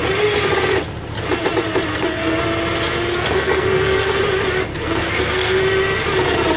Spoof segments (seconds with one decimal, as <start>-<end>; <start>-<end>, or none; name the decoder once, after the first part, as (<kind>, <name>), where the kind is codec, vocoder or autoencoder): 1.9-2.4 (codec, SNAC); 3.1-4.2; 4.7-5.6